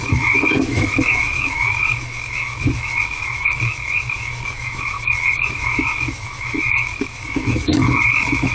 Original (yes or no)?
no